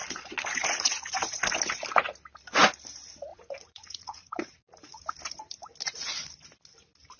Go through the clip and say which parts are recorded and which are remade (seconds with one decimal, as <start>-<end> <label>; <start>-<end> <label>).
0.0-1.4 remade; 1.4-3.3 recorded; 3.3-5.0 remade; 5.0-7.2 recorded